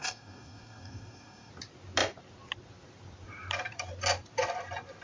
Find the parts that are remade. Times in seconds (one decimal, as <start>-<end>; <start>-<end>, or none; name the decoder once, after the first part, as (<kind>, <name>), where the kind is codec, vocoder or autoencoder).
0.0-1.5 (codec, DAC)